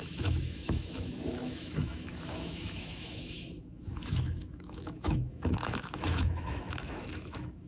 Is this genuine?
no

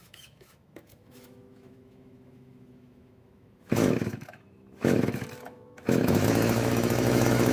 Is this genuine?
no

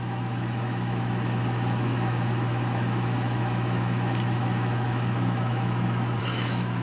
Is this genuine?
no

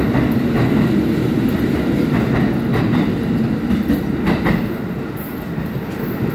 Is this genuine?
yes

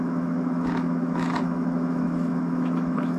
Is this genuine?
no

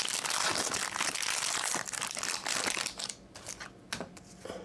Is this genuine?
yes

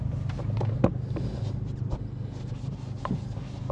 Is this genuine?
yes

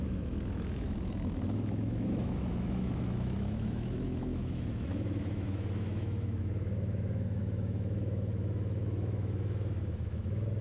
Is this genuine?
no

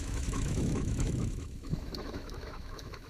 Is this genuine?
no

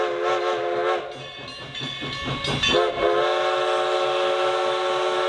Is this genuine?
yes